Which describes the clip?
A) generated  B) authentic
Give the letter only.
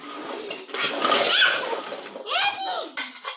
B